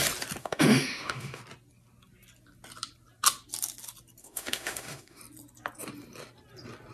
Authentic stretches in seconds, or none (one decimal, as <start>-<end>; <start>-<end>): 0.0-0.4; 1.4-4.2; 5.2-6.9